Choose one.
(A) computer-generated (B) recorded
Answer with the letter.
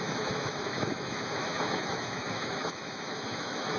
A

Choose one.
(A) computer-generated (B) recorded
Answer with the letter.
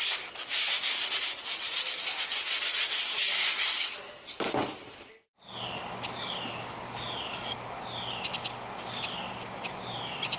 B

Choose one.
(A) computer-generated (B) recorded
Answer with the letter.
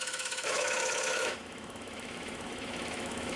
A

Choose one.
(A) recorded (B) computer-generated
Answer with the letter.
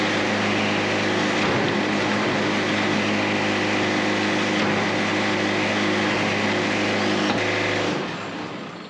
A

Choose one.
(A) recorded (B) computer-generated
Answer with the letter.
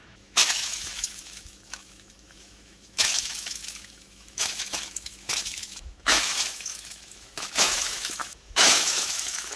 B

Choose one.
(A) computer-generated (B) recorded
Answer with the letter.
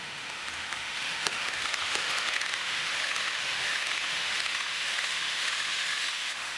A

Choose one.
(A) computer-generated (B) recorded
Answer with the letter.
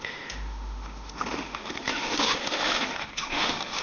A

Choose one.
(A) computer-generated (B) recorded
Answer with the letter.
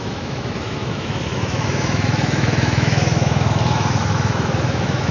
A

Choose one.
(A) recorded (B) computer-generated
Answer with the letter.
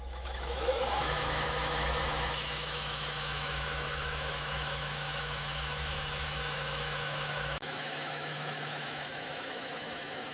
B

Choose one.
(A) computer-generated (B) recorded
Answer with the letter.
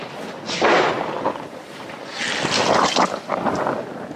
B